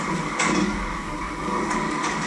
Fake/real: fake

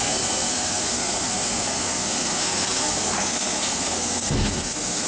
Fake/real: fake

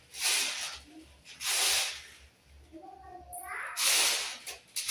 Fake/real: real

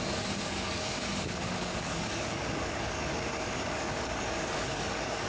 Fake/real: fake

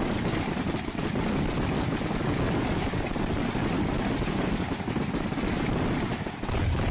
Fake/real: real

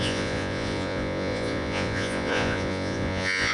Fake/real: fake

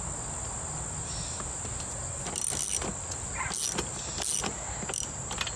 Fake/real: real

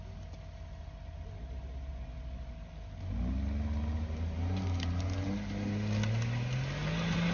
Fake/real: real